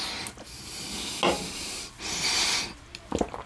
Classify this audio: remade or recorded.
recorded